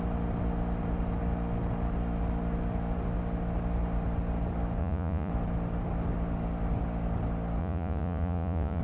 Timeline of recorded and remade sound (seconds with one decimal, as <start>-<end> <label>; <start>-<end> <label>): 0.0-4.8 recorded; 4.8-5.3 remade; 5.3-7.6 recorded; 7.6-8.8 remade